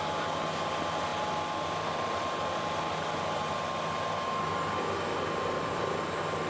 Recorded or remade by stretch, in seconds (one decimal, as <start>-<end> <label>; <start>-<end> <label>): 0.0-6.5 recorded